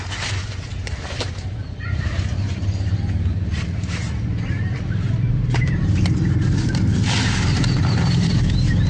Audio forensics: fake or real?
fake